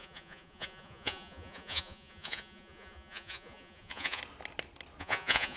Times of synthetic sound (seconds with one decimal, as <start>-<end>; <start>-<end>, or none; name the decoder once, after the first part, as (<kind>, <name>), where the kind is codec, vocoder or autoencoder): 0.0-4.2 (vocoder, Vocos); 5.0-5.6